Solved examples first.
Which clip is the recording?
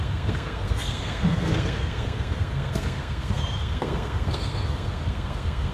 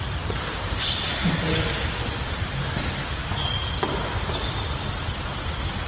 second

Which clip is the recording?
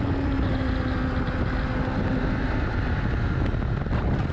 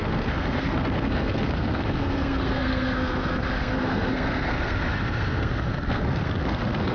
first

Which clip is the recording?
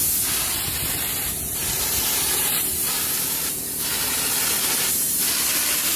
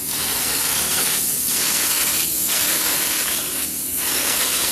first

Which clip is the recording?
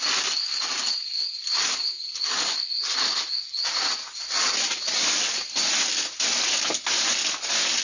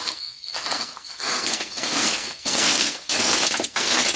first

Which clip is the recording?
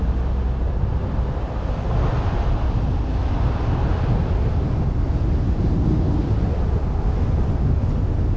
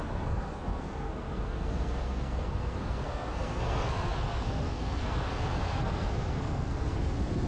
first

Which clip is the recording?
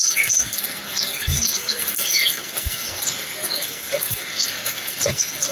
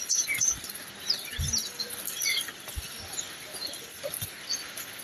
second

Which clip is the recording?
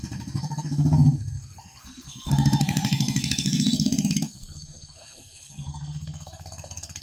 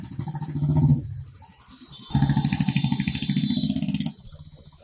second